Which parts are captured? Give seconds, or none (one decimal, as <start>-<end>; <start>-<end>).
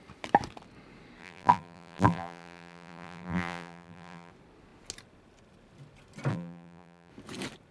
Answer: 0.0-1.2; 4.3-6.3; 7.1-7.7